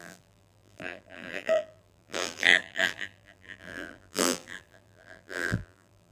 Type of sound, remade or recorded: remade